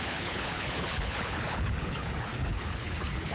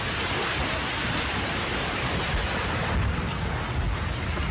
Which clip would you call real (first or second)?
second